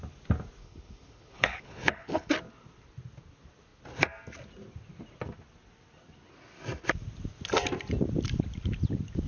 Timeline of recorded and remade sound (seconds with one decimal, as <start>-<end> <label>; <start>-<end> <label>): 0.0-0.6 recorded; 0.6-2.3 remade; 2.3-9.3 recorded